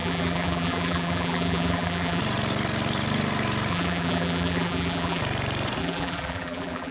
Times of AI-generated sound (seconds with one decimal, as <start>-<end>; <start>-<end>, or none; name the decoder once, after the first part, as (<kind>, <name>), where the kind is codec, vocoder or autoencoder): 0.0-2.2 (vocoder, BigVGAN v2); 3.7-5.2; 5.8-6.9